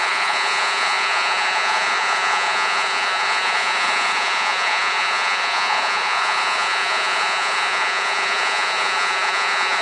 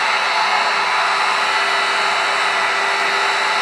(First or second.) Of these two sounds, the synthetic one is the first